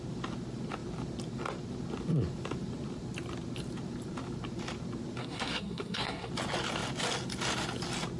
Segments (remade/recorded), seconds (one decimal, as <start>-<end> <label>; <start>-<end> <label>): 0.0-5.2 recorded; 5.2-6.3 remade; 6.3-8.2 recorded